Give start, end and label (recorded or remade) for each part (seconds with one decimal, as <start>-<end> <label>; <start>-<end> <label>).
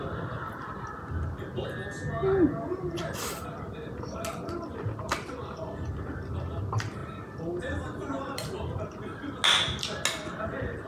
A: 0.0-10.9 recorded